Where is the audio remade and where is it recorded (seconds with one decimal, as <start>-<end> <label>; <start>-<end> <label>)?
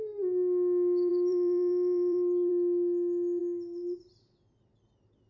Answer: 0.0-1.1 recorded; 1.1-2.5 remade; 2.5-5.3 recorded